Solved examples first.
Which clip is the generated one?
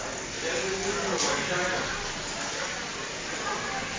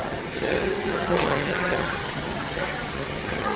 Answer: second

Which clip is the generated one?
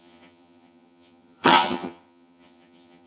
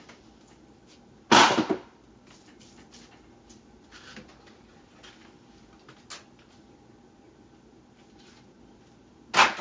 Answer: first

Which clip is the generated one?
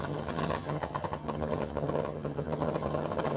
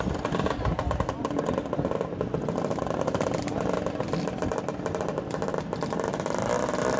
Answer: first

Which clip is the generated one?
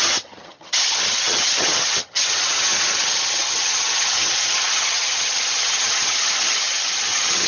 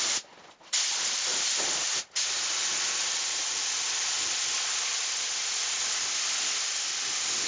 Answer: first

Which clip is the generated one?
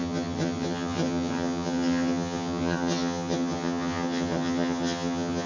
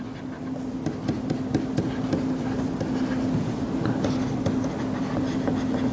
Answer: first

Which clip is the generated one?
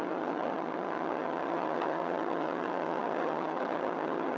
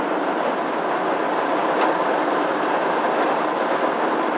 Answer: first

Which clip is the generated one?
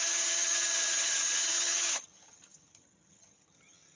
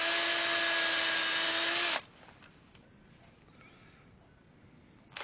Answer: first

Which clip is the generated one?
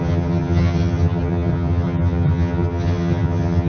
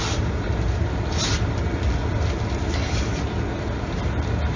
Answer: first